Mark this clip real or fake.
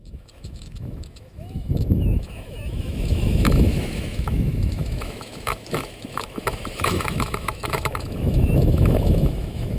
fake